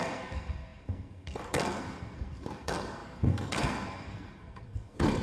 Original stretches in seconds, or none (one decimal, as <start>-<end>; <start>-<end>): none